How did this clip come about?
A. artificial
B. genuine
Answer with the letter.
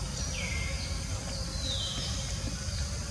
B